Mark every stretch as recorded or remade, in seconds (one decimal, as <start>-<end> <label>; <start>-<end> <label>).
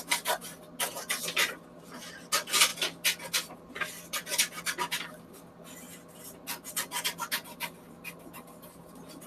0.0-9.3 recorded